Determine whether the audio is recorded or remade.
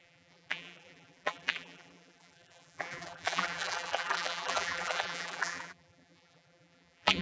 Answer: remade